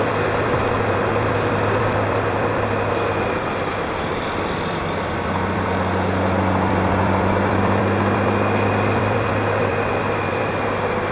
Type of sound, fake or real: fake